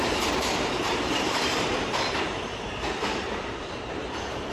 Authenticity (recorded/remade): remade